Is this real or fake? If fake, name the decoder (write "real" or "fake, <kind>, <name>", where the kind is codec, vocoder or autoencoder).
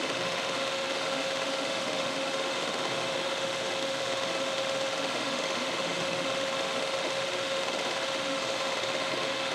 fake, autoencoder, DAC-VAE